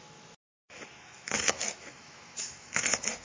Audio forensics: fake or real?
fake